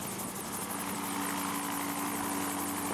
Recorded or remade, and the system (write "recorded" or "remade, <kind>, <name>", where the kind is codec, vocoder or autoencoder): recorded